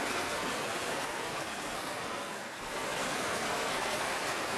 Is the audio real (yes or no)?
no